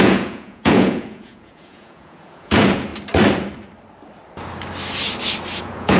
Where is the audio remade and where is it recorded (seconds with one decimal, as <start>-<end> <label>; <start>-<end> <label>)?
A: 0.0-2.9 remade; 2.9-5.6 recorded; 5.6-6.0 remade